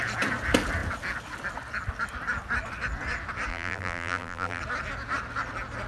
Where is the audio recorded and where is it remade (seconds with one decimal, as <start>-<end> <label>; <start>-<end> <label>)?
0.0-3.5 recorded; 3.5-4.6 remade; 4.6-5.9 recorded